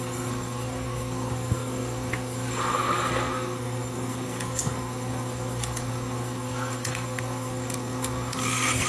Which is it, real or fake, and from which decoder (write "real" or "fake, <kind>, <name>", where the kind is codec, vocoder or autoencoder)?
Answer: fake, codec, SNAC